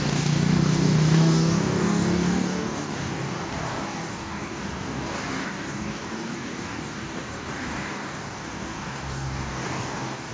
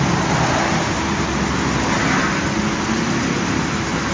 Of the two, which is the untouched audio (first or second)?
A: second